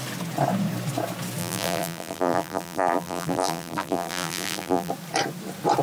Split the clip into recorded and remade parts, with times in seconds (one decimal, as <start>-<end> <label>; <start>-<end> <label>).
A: 0.0-1.4 recorded; 1.4-4.9 remade; 4.9-5.8 recorded